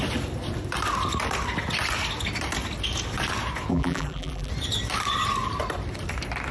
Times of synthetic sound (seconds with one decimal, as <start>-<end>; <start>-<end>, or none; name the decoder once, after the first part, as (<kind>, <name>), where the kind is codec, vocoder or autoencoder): 3.7-4.5 (vocoder, BigVGAN v2)